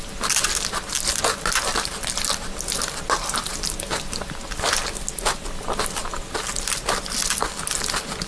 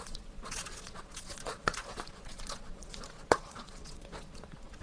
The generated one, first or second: second